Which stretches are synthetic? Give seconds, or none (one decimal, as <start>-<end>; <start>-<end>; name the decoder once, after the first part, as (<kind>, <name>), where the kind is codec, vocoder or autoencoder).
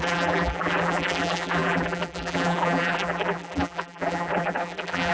0.0-5.1 (vocoder, BigVGAN v2)